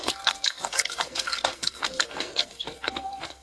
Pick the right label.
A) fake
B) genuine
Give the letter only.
A